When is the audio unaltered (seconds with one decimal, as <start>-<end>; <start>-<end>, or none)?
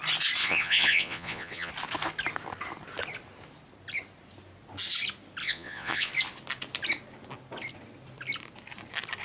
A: 0.0-0.4; 1.7-5.4; 6.1-9.2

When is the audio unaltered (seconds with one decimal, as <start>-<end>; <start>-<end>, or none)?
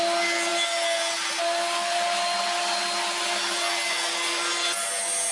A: 0.0-5.3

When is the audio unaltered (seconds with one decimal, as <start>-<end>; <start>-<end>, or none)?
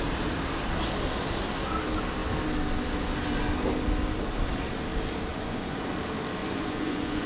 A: 0.0-5.3; 5.9-6.4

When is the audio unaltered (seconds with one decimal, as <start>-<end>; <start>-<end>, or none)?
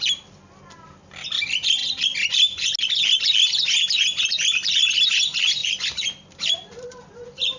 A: 0.0-5.6; 7.1-7.6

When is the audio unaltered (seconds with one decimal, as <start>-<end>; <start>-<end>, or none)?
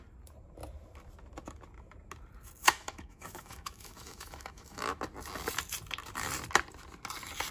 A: 0.0-2.6; 5.0-7.5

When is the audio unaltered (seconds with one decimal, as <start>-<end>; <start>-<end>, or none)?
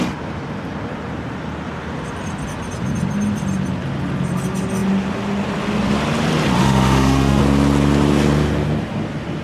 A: 0.0-6.6; 7.4-9.4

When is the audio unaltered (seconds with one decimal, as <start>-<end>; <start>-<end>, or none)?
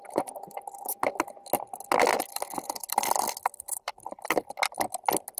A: 0.0-2.1; 4.3-5.4